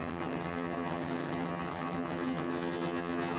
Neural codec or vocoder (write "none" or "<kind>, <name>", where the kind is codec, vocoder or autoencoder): vocoder, HiFi-GAN